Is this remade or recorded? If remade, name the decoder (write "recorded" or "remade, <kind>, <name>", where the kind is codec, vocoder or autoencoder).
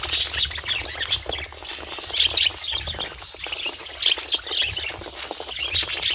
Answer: recorded